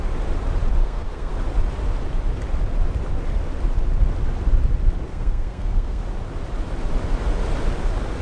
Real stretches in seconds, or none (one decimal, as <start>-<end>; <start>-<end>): 0.0-0.8; 1.3-5.1; 6.0-8.2